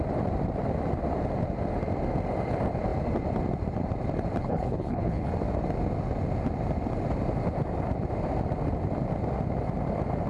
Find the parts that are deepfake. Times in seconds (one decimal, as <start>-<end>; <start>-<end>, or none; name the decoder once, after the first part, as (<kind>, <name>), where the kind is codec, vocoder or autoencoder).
4.4-5.3 (codec, HILCodec)

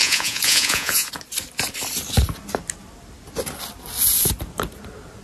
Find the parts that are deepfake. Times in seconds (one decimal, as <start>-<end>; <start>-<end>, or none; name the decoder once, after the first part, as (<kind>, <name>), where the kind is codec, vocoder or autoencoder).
0.0-1.1 (vocoder, Vocos)

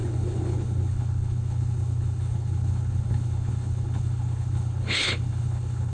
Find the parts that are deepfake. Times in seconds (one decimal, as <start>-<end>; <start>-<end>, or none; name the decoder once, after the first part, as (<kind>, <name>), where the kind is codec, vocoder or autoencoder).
0.0-5.9 (codec, HILCodec)

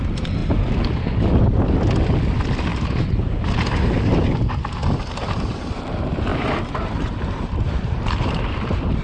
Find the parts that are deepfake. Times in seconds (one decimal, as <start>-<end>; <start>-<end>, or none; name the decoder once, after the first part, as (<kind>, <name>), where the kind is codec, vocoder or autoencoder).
2.7-3.4 (vocoder, BigVGAN v2); 6.3-9.0

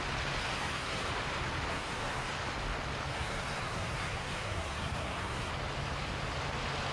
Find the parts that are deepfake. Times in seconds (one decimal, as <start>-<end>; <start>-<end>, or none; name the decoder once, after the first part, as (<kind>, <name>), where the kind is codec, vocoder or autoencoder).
0.4-1.1 (codec, SNAC); 1.7-2.3; 3.1-5.5